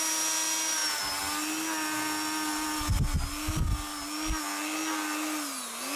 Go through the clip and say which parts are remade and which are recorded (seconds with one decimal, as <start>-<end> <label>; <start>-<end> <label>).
0.0-6.0 recorded